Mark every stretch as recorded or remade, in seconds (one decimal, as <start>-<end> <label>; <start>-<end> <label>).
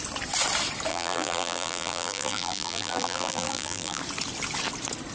0.0-0.9 recorded; 0.9-4.0 remade; 4.0-5.1 recorded